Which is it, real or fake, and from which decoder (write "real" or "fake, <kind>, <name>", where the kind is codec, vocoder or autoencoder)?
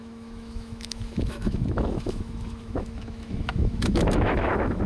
fake, autoencoder, DAC-VAE